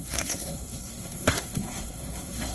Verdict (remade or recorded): remade